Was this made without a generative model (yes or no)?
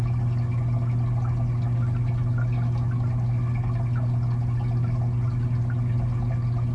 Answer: yes